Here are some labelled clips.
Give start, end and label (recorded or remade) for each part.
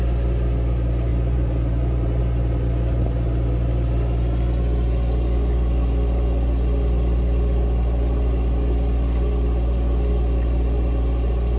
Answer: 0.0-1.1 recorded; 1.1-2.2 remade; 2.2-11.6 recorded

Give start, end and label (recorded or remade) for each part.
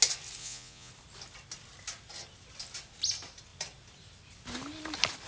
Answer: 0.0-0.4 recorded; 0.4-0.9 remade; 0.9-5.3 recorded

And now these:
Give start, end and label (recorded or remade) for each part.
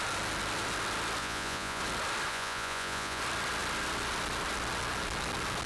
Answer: 0.0-1.2 recorded; 1.2-1.8 remade; 1.8-2.3 recorded; 2.3-3.2 remade; 3.2-5.7 recorded